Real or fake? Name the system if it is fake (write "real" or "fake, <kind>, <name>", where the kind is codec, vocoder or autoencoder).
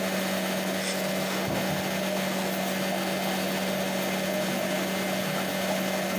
real